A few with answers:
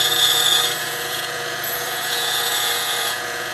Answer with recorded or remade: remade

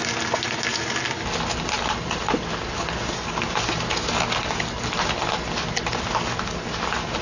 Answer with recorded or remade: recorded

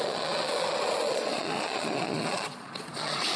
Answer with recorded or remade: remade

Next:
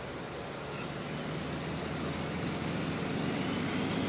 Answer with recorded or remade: recorded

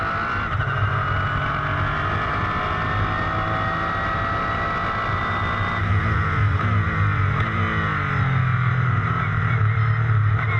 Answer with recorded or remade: recorded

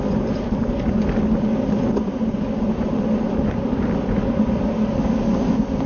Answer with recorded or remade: recorded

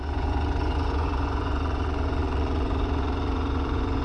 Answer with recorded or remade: remade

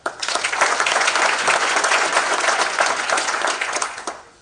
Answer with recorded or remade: remade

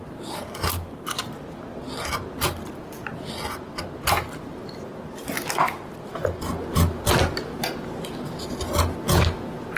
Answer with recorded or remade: recorded